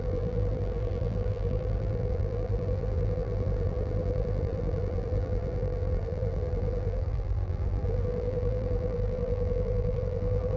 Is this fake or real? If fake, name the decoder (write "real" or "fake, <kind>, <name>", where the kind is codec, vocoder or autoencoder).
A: fake, vocoder, BigVGAN v2